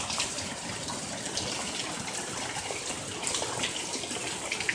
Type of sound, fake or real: real